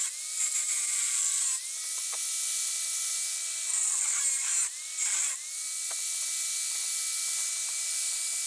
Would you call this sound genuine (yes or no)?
yes